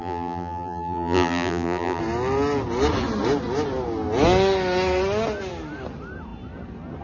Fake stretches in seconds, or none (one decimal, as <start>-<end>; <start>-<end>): 0.0-2.0